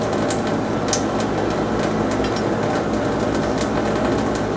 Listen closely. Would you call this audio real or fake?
real